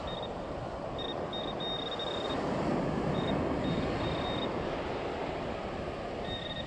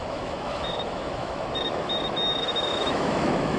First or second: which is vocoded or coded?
second